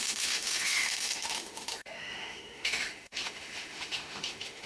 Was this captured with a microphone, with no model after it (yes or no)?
no